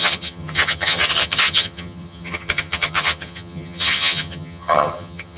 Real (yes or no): no